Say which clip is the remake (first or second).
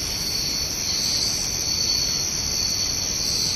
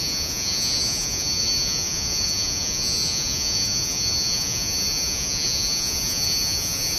second